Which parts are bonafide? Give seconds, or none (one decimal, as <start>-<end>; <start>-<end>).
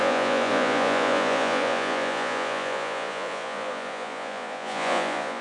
none